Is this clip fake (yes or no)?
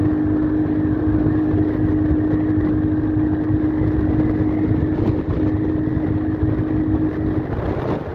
no